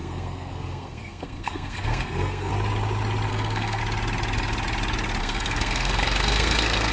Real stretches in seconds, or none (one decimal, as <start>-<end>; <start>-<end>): 2.5-3.3; 3.8-5.2